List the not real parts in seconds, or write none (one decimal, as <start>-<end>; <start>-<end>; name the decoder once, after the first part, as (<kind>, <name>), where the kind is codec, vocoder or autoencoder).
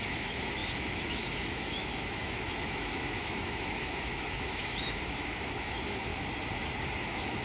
0.0-6.1 (autoencoder, DAC-VAE); 7.0-7.4